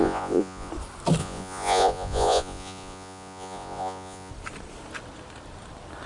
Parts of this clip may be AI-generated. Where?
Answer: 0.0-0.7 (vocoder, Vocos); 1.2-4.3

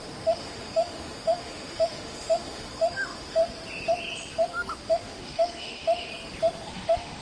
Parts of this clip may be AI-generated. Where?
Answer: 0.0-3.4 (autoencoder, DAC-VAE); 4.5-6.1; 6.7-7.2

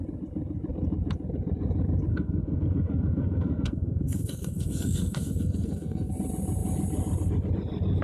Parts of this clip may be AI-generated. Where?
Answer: 2.1-6.1 (codec, SNAC)

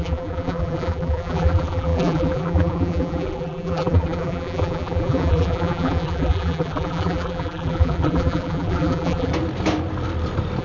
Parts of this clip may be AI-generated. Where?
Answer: 0.0-9.3 (vocoder, BigVGAN v2)

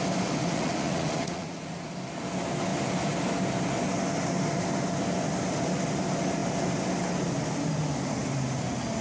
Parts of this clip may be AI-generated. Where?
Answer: 0.4-1.9 (vocoder, Vocos)

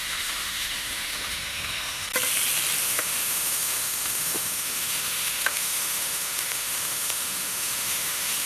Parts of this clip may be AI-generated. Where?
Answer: 0.0-2.1 (autoencoder, DAC-VAE); 2.8-8.5

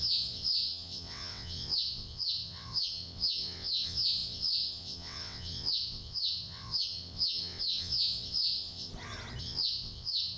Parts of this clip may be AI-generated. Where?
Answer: 0.0-8.9 (vocoder, WaveNeXt); 9.4-10.4

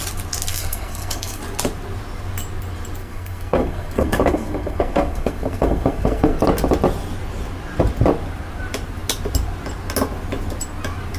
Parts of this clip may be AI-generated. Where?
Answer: 0.5-1.4 (codec, SNAC); 3.0-6.4